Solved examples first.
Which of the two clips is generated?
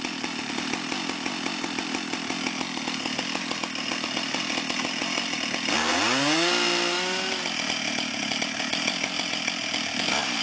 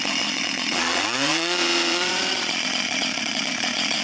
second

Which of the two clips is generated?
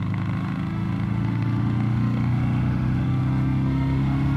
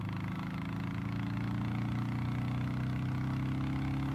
first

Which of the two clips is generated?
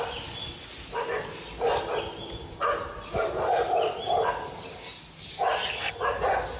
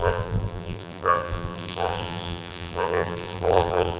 second